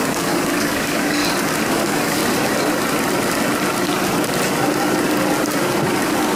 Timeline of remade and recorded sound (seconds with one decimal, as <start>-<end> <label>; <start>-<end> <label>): 0.0-1.2 remade; 1.2-1.7 recorded; 1.7-2.2 remade; 2.2-6.0 recorded; 6.0-6.4 remade